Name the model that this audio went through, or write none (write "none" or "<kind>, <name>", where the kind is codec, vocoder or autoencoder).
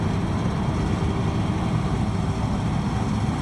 none